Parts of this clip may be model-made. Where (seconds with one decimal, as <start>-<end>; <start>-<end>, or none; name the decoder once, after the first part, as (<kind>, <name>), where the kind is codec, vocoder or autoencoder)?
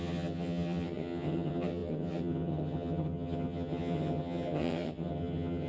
0.0-5.7 (vocoder, HiFi-GAN)